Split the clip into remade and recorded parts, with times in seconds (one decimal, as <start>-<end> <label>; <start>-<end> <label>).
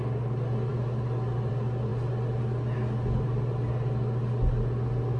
0.0-5.2 recorded